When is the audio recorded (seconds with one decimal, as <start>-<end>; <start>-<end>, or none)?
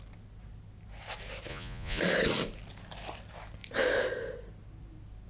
0.0-1.5; 2.0-5.3